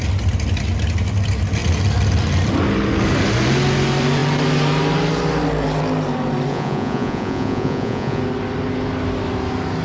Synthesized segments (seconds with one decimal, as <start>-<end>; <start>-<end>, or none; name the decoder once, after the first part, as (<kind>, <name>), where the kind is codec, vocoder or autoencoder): 6.5-8.2 (vocoder, Vocos)